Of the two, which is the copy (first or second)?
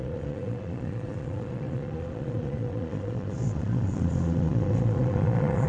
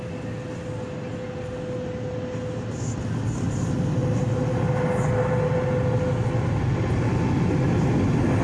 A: first